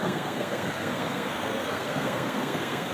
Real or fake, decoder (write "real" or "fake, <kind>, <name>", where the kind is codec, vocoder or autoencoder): fake, codec, SNAC